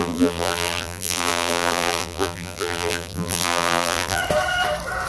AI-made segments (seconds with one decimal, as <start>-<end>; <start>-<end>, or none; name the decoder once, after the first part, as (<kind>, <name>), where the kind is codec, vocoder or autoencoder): 0.0-4.2 (vocoder, BigVGAN v2)